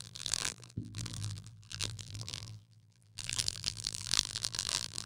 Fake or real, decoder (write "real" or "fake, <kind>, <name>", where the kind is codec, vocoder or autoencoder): fake, vocoder, BigVGAN v2